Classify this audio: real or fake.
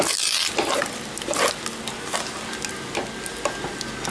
real